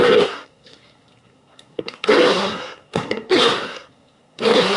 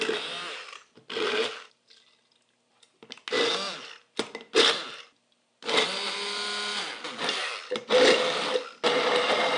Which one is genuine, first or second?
second